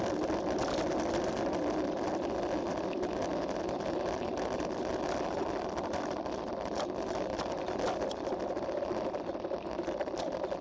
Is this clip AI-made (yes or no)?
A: no